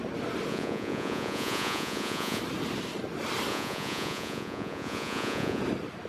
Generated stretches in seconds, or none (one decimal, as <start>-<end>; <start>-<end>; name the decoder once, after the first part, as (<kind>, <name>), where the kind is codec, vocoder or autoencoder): 0.5-2.4 (vocoder, Vocos); 3.5-5.6